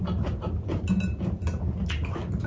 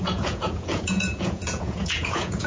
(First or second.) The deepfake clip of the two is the second